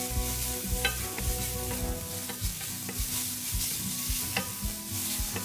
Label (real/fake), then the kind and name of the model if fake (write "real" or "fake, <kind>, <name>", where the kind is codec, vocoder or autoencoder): real